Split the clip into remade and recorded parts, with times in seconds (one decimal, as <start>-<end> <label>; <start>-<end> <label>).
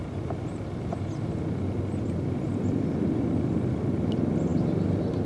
0.0-5.3 recorded